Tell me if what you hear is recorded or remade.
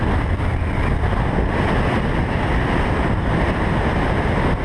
recorded